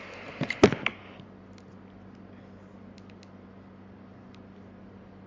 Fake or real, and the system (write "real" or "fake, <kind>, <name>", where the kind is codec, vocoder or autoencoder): real